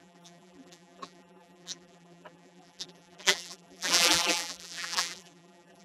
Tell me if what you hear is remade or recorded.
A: remade